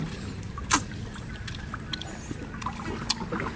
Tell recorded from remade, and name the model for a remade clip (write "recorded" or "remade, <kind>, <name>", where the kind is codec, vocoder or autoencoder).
recorded